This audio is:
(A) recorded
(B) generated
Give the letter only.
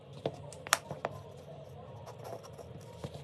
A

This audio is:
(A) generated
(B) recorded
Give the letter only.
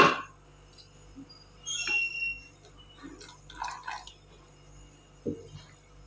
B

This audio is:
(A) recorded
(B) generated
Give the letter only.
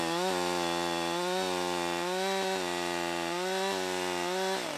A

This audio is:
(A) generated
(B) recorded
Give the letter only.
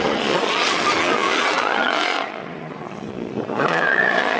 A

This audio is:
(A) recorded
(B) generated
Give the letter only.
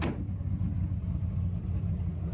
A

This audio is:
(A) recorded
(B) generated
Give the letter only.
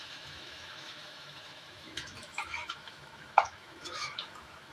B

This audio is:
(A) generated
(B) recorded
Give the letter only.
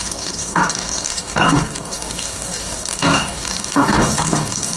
A